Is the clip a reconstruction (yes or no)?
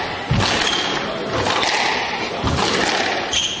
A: no